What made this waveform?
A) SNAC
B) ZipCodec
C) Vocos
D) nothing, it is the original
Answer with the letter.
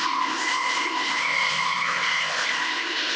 B